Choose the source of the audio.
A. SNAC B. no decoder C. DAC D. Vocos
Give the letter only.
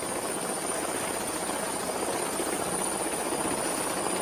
B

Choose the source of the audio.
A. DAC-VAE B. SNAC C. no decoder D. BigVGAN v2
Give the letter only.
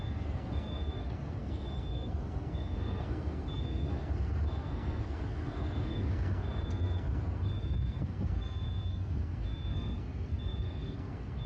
B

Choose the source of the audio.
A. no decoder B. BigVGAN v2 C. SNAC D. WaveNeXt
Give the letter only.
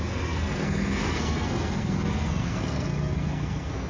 C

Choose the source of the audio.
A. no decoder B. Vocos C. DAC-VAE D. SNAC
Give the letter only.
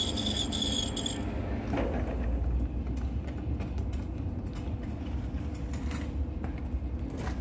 A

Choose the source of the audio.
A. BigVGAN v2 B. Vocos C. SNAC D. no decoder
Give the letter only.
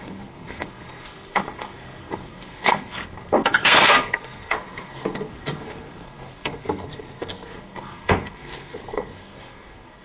C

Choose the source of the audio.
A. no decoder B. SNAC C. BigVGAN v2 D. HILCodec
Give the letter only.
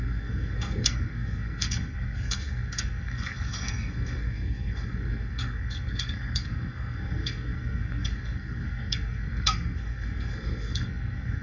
B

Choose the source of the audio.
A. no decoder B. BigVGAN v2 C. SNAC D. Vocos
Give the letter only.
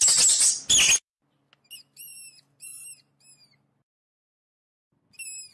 A